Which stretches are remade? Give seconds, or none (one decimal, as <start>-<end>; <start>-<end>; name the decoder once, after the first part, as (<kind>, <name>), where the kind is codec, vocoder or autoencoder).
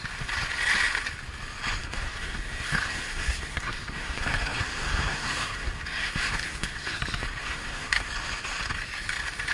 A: 1.8-7.0 (codec, SNAC); 7.4-8.1